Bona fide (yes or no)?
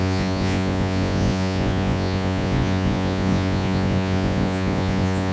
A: no